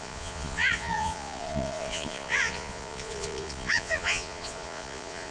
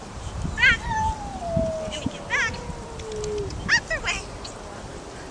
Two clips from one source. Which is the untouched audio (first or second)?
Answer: second